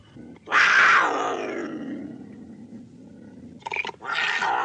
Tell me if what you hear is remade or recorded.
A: recorded